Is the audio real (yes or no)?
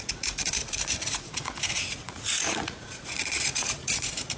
no